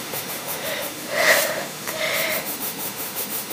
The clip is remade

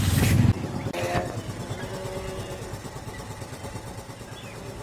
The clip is recorded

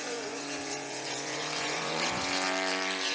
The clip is remade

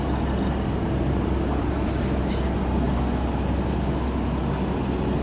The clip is recorded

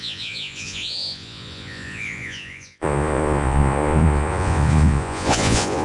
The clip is remade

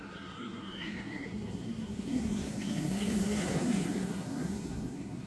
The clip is remade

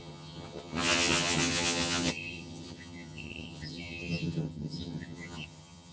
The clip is remade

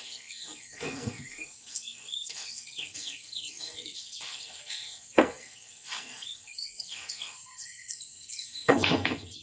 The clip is remade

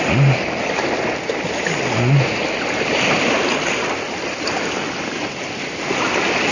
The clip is recorded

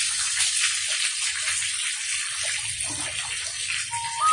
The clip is recorded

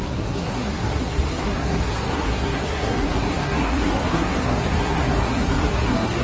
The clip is remade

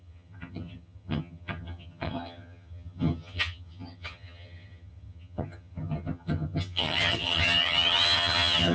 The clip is remade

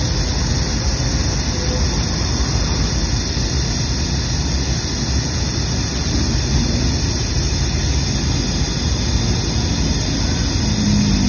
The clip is recorded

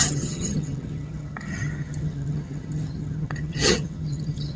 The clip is remade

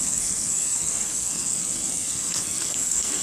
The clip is remade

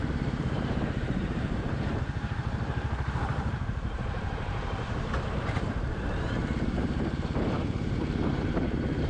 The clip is remade